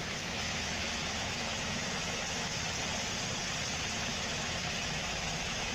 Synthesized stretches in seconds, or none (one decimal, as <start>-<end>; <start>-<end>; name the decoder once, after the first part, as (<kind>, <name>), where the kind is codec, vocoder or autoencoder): 0.0-2.8 (autoencoder, DAC-VAE); 4.1-5.7

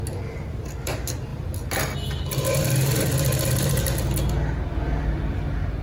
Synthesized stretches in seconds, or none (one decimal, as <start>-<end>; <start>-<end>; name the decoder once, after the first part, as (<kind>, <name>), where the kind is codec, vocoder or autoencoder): none

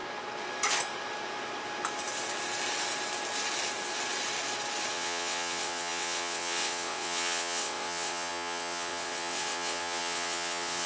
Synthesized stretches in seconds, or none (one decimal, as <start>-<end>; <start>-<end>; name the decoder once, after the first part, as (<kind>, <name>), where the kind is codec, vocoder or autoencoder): 4.9-10.9 (vocoder, WaveNeXt)

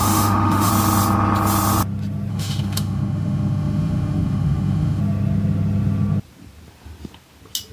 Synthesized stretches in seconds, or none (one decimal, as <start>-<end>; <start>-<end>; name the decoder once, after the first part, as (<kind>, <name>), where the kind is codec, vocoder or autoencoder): 0.0-0.7 (autoencoder, DAC-VAE); 2.3-5.0

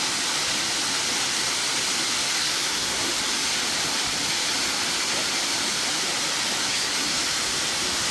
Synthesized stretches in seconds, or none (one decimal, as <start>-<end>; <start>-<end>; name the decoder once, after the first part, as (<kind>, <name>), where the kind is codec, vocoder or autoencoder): 2.4-3.1 (codec, SNAC); 6.6-7.2

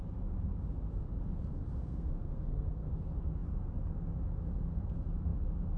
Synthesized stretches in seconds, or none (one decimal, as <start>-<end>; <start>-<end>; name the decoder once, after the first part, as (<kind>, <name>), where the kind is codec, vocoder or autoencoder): 1.8-2.9 (codec, SNAC)